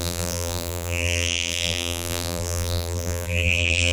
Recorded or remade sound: remade